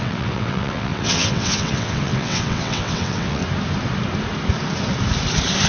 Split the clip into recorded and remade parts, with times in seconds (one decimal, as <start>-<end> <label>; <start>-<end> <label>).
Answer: 0.0-3.4 remade; 3.4-5.7 recorded